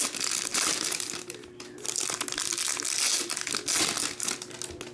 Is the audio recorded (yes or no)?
yes